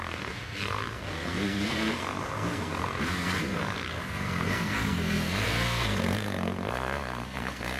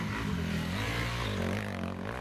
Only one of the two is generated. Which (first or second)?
first